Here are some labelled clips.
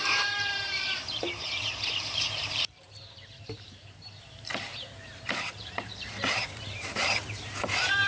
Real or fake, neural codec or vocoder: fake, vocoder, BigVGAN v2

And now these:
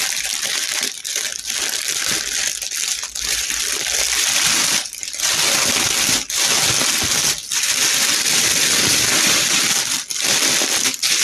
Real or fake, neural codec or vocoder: fake, vocoder, BigVGAN v2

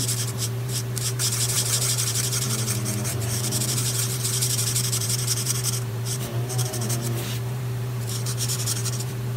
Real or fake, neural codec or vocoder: fake, vocoder, BigVGAN v2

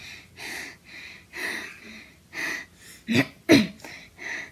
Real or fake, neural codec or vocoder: fake, vocoder, BigVGAN v2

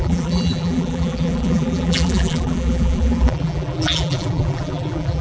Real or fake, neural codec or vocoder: fake, vocoder, BigVGAN v2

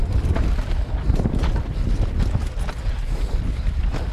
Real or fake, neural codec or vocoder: real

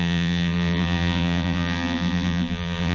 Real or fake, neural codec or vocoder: fake, vocoder, BigVGAN v2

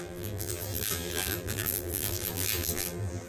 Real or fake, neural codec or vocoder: fake, vocoder, BigVGAN v2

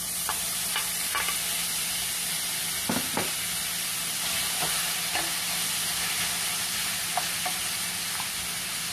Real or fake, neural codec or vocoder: real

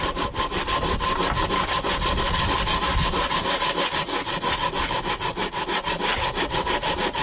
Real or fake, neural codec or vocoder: real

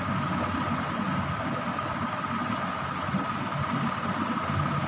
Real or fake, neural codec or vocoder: fake, vocoder, BigVGAN v2